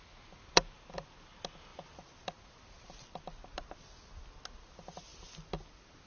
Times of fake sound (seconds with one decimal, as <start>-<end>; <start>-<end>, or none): none